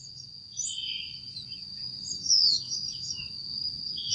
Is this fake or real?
real